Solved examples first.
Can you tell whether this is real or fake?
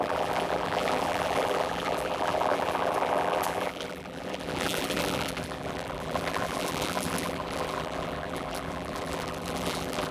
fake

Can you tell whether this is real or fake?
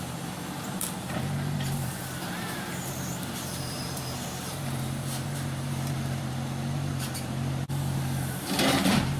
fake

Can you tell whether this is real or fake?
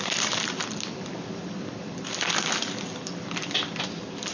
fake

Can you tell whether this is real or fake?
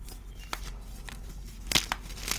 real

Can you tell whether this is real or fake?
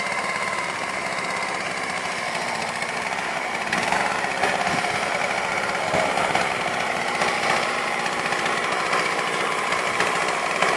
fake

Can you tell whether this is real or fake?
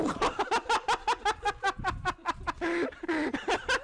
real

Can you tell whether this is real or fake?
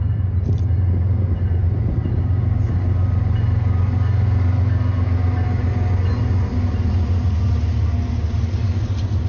real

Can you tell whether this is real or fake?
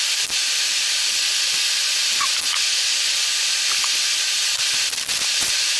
real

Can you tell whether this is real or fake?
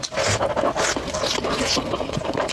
real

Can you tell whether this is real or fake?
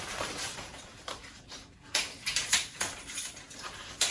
fake